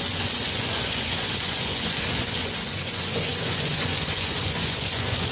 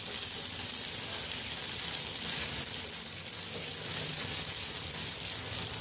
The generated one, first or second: first